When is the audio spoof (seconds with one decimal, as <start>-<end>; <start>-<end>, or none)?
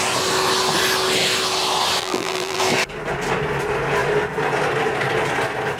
2.0-2.6